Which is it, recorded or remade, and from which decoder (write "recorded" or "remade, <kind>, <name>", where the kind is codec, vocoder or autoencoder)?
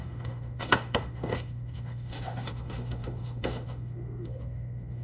remade, autoencoder, DAC-VAE